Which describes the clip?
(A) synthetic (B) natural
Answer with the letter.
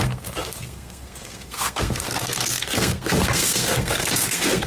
A